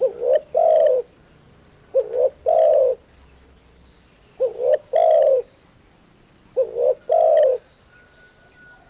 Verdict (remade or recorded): recorded